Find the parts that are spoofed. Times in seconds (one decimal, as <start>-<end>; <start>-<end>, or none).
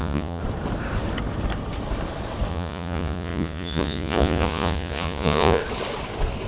0.0-0.4; 2.5-5.6